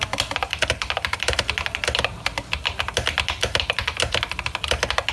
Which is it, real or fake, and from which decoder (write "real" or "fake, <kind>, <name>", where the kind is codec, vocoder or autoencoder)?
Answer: real